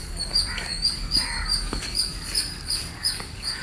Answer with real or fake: fake